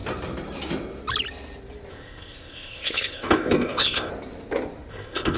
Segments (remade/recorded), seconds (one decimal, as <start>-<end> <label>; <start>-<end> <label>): 0.0-1.9 recorded; 1.9-4.1 remade; 4.1-4.9 recorded; 4.9-5.4 remade